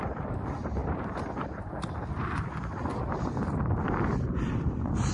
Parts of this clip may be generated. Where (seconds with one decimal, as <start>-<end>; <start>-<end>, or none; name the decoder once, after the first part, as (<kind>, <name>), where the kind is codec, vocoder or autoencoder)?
0.0-5.1 (vocoder, BigVGAN v2)